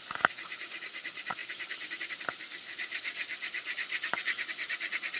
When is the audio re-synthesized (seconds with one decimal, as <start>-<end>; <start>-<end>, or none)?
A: none